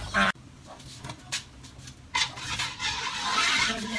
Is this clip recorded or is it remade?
recorded